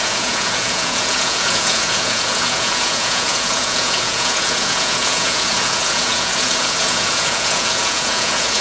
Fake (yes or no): yes